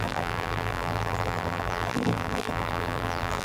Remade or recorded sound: remade